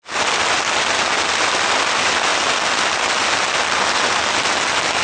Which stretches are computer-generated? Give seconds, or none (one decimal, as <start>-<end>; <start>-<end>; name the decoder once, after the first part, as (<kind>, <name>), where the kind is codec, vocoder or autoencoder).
none